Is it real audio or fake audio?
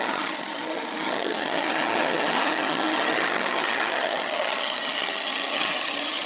fake